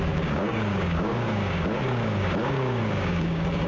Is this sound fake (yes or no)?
yes